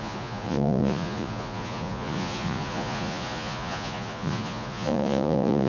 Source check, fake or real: fake